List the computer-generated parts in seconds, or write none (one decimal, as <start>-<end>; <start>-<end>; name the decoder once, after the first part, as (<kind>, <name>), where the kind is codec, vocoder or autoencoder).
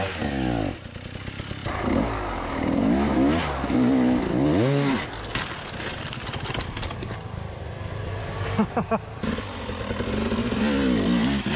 8.2-8.9 (codec, DAC)